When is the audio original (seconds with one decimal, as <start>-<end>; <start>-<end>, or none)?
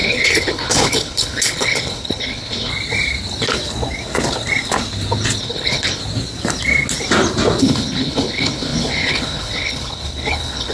2.7-5.4; 6.0-7.6